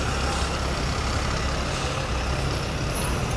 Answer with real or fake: real